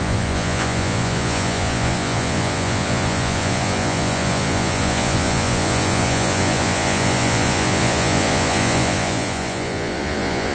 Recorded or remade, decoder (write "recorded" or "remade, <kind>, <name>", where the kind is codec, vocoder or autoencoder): remade, vocoder, Vocos